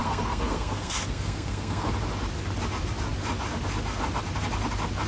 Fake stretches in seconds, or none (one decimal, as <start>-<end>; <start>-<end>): 0.0-1.9